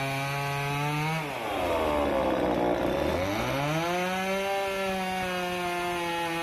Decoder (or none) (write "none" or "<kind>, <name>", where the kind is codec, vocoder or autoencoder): none